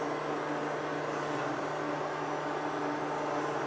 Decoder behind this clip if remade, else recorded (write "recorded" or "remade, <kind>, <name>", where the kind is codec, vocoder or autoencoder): recorded